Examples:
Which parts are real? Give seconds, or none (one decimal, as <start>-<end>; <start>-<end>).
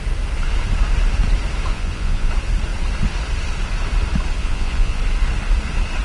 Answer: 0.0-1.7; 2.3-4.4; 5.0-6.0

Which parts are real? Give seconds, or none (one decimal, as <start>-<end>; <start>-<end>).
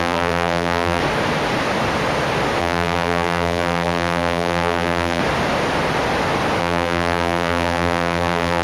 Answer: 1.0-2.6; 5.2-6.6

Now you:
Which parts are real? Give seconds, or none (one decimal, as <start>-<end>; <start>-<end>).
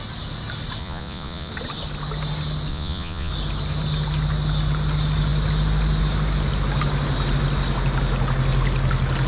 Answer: 0.0-0.8; 1.5-2.7; 3.3-9.3